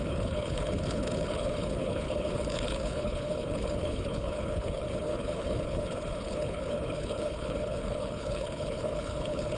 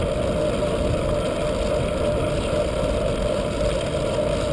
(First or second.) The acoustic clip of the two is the second